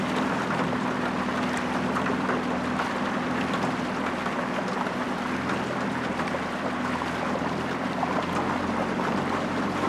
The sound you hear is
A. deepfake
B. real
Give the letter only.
B